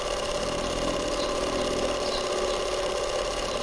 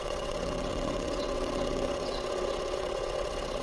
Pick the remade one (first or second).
second